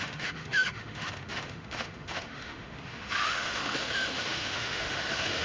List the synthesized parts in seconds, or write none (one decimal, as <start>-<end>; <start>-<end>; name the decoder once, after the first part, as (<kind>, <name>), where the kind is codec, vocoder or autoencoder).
0.0-5.4 (autoencoder, DAC-VAE)

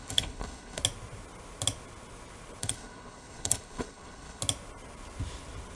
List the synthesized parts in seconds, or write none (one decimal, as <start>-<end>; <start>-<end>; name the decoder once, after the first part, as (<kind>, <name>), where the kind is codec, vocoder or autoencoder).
0.0-0.8 (codec, HILCodec); 2.6-4.4

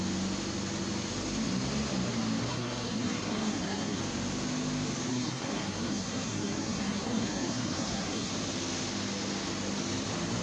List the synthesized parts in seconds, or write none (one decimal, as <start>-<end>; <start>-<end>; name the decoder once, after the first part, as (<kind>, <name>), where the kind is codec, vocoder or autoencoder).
2.5-4.0 (codec, SNAC); 5.1-8.3

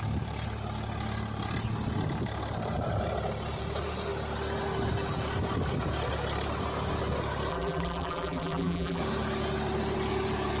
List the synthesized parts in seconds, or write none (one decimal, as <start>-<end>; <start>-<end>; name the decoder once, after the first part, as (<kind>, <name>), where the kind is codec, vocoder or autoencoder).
7.5-9.0 (vocoder, BigVGAN v2)

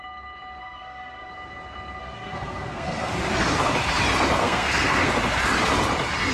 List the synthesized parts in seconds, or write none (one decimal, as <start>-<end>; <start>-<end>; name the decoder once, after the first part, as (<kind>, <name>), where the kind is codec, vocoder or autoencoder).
0.6-1.3 (codec, SNAC); 2.0-3.1; 4.4-5.1

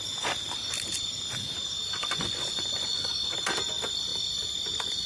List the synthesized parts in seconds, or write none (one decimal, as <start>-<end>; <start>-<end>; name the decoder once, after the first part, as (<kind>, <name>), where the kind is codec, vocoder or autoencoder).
2.0-3.3 (vocoder, Vocos)

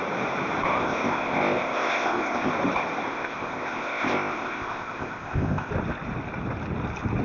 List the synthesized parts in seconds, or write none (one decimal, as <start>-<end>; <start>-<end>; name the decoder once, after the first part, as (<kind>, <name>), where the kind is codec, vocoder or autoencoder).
0.7-2.5 (codec, ZipCodec); 3.1-5.7